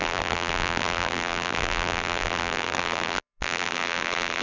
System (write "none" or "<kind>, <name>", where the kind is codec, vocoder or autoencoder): vocoder, BigVGAN v2